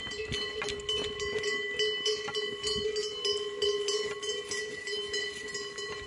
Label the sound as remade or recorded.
recorded